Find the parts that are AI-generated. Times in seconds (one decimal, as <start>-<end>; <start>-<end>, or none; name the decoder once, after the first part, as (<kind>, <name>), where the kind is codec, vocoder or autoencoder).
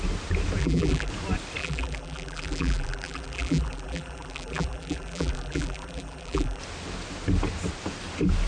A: 0.6-1.1 (vocoder, BigVGAN v2); 1.6-6.6